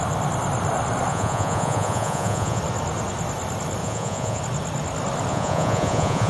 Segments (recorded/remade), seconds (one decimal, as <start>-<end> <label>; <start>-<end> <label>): 0.0-1.1 recorded; 1.1-2.6 remade; 2.6-3.8 recorded; 3.8-4.4 remade; 4.4-5.3 recorded; 5.3-6.3 remade

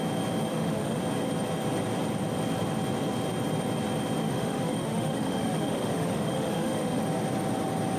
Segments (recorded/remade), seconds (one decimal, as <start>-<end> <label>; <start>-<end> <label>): 0.0-0.5 recorded; 0.5-1.0 remade; 1.0-4.2 recorded; 4.2-7.0 remade; 7.0-8.0 recorded

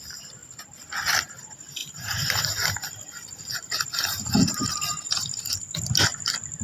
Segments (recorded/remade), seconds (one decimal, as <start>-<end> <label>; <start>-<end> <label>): 0.0-1.8 recorded; 1.8-5.8 remade; 5.8-6.6 recorded

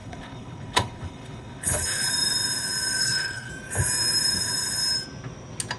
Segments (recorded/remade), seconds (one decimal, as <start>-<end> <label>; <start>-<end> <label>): 0.0-2.1 remade; 2.1-3.0 recorded; 3.0-3.5 remade; 3.5-5.8 recorded

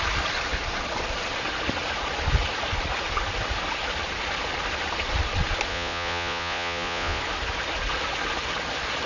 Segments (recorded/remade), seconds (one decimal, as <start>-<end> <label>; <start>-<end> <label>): 0.0-5.7 recorded; 5.7-7.2 remade; 7.2-9.1 recorded

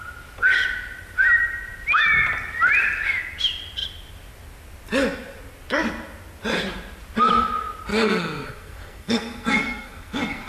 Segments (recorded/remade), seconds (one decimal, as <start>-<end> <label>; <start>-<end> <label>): 0.0-7.9 recorded; 7.9-10.5 remade

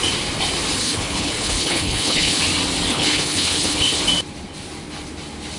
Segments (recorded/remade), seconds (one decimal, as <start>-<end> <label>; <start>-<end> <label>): 0.0-0.8 recorded; 0.8-2.4 remade; 2.4-2.9 recorded; 2.9-4.0 remade; 4.0-5.6 recorded

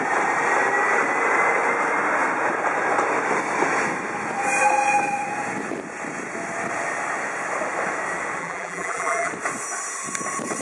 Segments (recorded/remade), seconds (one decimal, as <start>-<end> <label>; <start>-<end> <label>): 0.0-8.4 recorded; 8.4-9.3 remade; 9.3-10.6 recorded